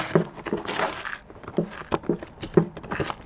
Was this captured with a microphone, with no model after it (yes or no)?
yes